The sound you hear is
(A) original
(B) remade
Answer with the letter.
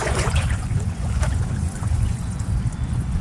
B